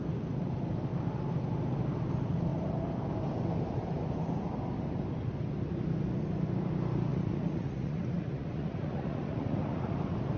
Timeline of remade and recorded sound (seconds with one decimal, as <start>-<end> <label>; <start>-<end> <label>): 0.0-7.1 recorded; 7.1-9.9 remade; 9.9-10.4 recorded